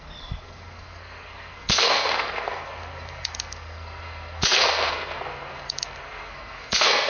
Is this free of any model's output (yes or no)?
no